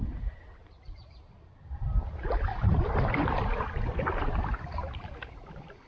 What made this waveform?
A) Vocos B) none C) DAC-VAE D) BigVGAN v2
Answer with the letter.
D